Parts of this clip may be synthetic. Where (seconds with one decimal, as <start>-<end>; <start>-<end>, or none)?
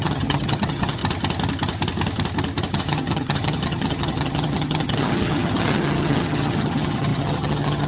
0.0-1.0; 2.7-7.9